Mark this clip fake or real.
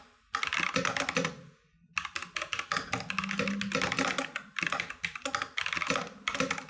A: real